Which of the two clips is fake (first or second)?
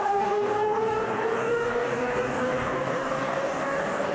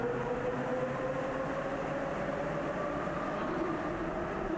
first